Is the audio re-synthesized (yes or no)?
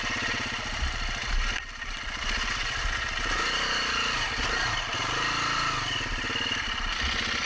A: no